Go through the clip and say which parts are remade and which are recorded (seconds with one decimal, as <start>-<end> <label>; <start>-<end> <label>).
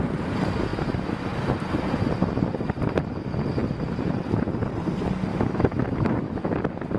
0.0-0.7 recorded; 0.7-1.2 remade; 1.2-5.3 recorded; 5.3-6.5 remade; 6.5-7.0 recorded